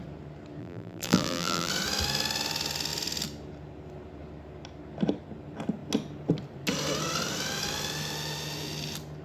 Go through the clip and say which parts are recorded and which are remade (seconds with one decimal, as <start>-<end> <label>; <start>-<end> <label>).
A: 0.0-0.6 recorded; 0.6-1.7 remade; 1.7-9.2 recorded